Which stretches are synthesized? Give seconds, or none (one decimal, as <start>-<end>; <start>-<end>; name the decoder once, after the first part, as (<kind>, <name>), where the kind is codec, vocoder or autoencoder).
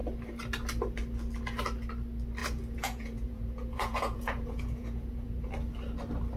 2.4-5.5 (vocoder, Vocos)